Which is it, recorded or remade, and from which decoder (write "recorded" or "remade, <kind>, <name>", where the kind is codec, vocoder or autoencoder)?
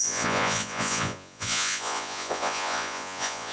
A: remade, vocoder, Vocos